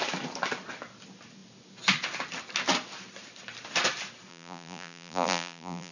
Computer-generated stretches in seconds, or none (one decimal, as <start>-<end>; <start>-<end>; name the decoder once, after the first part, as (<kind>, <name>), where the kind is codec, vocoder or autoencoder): 4.3-5.9 (vocoder, BigVGAN v2)